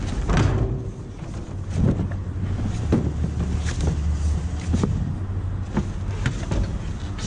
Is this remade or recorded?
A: recorded